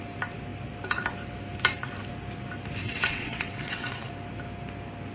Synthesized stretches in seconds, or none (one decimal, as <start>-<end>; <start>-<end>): 2.8-4.1